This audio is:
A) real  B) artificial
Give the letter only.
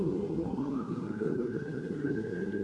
B